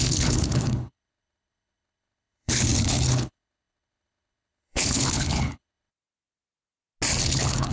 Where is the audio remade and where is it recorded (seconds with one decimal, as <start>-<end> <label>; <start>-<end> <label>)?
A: 0.0-5.9 remade; 5.9-7.2 recorded; 7.2-7.7 remade